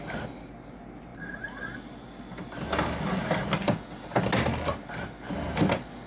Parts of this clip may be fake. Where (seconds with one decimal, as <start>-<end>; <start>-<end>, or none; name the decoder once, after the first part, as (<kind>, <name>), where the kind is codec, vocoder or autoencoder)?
none